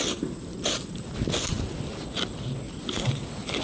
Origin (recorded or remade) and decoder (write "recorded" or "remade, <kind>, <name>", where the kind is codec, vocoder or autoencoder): recorded